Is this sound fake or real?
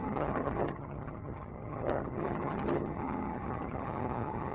fake